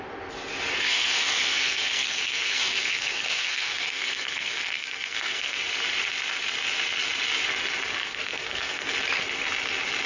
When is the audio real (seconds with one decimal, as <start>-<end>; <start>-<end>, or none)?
0.0-0.7; 5.6-8.0; 8.9-10.1